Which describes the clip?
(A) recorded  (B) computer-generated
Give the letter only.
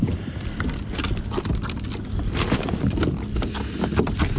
A